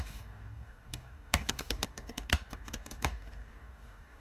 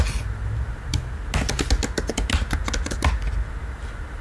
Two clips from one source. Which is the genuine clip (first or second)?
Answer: second